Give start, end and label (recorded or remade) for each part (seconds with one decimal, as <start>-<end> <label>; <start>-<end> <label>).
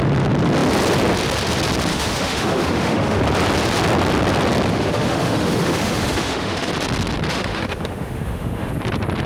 0.0-1.9 recorded; 1.9-3.2 remade; 3.2-4.7 recorded; 4.7-6.7 remade; 6.7-7.3 recorded; 7.3-8.7 remade; 8.7-9.3 recorded